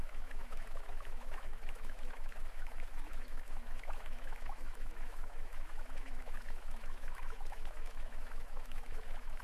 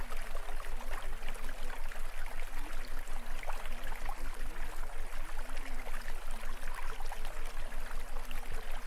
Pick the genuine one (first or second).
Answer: second